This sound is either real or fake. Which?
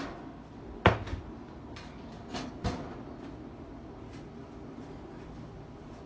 real